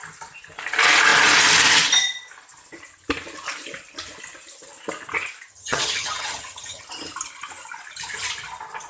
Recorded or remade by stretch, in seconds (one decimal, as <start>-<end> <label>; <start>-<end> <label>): 0.0-5.5 recorded; 5.5-6.8 remade; 6.8-8.9 recorded